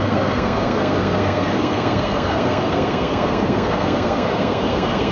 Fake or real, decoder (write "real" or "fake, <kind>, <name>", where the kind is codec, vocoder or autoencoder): fake, codec, SNAC